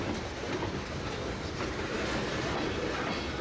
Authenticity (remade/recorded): recorded